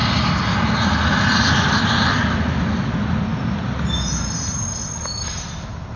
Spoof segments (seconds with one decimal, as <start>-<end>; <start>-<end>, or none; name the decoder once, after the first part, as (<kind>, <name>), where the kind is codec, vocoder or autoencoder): none